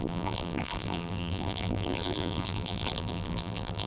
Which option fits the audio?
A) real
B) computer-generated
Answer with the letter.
B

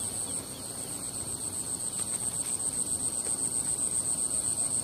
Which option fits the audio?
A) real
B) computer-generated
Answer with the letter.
A